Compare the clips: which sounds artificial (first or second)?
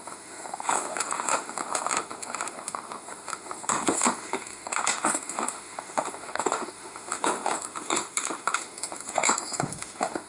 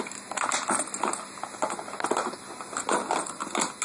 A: first